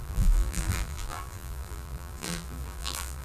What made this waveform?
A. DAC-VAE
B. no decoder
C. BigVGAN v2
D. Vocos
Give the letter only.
C